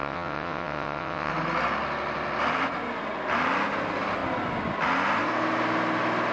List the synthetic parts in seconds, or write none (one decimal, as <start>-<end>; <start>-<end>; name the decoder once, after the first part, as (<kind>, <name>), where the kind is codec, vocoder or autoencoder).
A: 0.0-1.3 (vocoder, WaveNeXt)